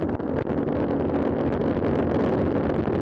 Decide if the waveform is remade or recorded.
recorded